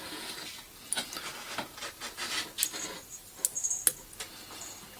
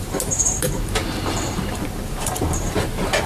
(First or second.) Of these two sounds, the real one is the first